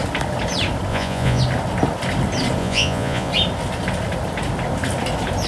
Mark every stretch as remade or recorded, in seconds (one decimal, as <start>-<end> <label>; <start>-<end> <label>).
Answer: 0.0-0.9 recorded; 0.9-1.4 remade; 1.4-2.6 recorded; 2.6-3.3 remade; 3.3-5.5 recorded